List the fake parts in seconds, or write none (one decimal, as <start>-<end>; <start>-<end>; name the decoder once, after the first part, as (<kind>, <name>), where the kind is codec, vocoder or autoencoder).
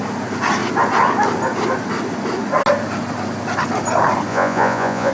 4.3-5.1 (vocoder, Vocos)